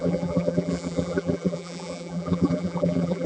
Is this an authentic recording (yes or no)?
no